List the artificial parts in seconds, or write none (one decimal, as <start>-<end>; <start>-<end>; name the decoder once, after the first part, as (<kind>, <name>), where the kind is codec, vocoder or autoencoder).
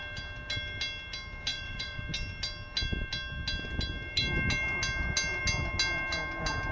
1.5-2.0 (vocoder, Vocos)